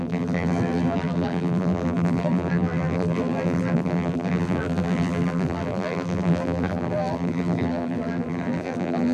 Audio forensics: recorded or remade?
remade